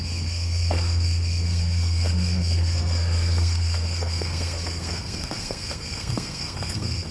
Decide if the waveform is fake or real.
fake